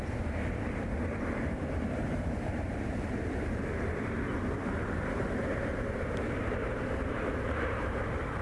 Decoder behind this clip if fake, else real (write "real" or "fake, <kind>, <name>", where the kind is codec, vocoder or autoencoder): fake, vocoder, BigVGAN v2